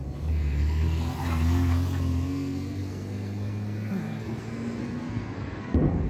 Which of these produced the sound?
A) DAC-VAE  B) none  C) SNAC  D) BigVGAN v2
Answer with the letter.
C